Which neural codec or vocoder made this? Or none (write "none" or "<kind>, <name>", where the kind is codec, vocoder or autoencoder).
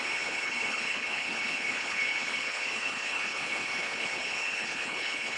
codec, HILCodec